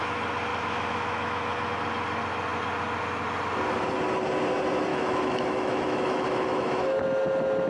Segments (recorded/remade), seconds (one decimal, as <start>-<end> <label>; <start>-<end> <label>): 0.0-0.5 recorded; 0.5-1.7 remade; 1.7-4.9 recorded; 4.9-7.0 remade; 7.0-7.7 recorded